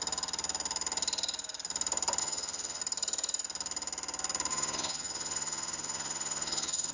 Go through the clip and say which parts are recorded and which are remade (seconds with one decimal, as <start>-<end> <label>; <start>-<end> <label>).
0.0-2.2 recorded; 2.2-2.8 remade; 2.8-4.5 recorded; 4.5-6.9 remade